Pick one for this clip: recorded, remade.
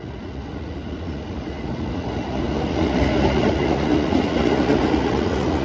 remade